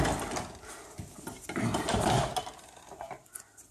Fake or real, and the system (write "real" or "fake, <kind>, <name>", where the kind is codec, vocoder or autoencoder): real